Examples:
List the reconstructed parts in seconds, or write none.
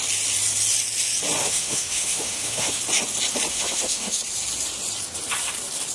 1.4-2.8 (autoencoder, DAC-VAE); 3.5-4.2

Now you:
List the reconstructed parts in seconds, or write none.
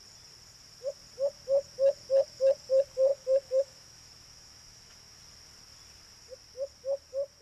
3.1-5.2 (autoencoder, DAC-VAE)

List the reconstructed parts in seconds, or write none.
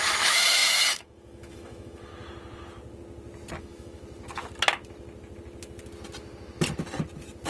0.0-2.1 (autoencoder, DAC-VAE); 3.6-4.0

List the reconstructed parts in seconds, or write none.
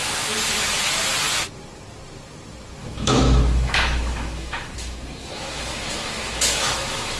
2.8-7.2 (autoencoder, DAC-VAE)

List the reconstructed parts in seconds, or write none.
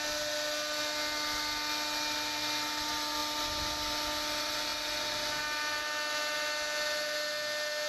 none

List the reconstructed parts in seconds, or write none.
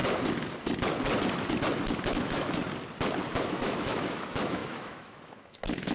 2.1-2.6 (autoencoder, DAC-VAE); 3.4-5.9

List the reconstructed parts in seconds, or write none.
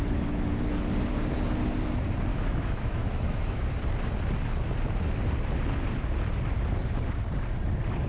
2.3-3.7 (autoencoder, DAC-VAE)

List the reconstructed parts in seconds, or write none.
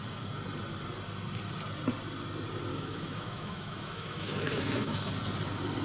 2.7-5.1 (autoencoder, DAC-VAE)